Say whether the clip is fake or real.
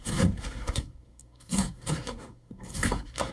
fake